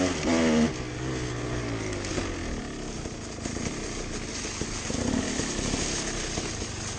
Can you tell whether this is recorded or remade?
recorded